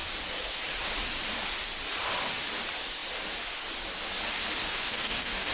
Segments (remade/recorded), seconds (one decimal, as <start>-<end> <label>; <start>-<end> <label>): 0.0-4.7 recorded; 4.7-5.5 remade